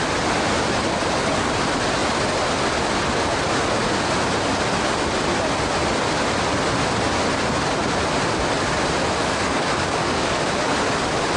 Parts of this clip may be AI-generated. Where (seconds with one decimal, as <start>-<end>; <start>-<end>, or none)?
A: 9.2-10.4